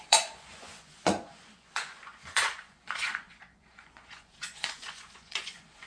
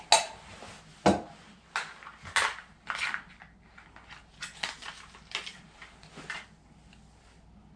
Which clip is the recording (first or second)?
second